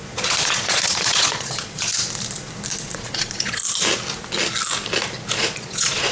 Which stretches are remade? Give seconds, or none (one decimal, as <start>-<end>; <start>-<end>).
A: 0.0-1.9; 2.8-3.6; 5.3-6.1